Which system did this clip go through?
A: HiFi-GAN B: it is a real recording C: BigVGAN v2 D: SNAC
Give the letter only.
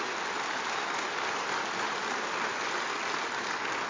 B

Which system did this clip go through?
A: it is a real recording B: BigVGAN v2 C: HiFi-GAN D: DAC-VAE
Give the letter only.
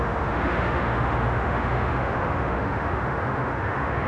D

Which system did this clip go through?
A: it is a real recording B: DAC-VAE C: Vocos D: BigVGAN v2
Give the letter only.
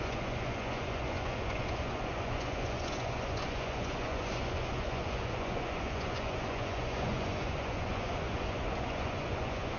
C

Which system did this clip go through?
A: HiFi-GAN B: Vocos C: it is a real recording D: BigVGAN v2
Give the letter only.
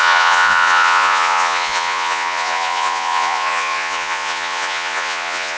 B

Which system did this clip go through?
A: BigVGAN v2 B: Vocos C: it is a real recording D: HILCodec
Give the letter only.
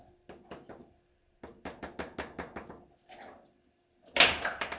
C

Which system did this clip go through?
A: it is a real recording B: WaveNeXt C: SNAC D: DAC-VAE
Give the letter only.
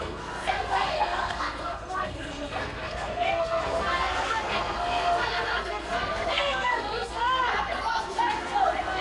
C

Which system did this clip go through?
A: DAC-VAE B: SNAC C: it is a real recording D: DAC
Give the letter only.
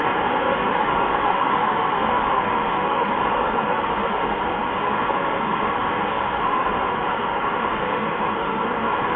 A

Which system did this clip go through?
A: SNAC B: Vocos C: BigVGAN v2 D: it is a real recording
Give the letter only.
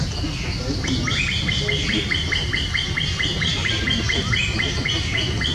D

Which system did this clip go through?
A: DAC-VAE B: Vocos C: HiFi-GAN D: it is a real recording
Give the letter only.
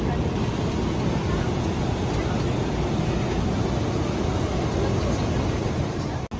D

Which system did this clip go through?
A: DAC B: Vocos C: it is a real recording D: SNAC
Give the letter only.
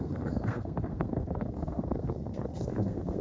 D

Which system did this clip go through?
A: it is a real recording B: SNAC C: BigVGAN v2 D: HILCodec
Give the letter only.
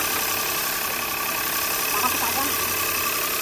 A